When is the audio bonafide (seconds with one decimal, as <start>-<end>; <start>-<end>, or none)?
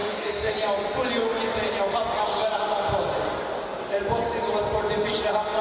0.5-5.6